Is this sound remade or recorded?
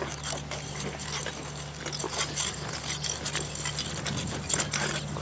recorded